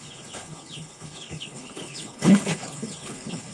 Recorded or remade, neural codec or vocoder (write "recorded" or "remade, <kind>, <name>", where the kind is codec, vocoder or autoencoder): remade, codec, HILCodec